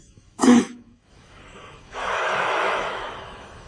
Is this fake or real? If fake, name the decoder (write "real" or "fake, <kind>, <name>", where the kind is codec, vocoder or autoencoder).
fake, autoencoder, DAC-VAE